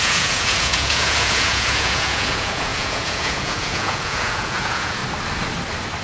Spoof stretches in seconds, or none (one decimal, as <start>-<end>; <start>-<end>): 0.0-5.0